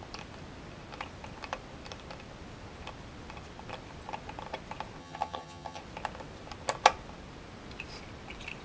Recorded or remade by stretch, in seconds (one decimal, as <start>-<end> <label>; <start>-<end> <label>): 0.0-5.0 recorded; 5.0-5.8 remade; 5.8-8.6 recorded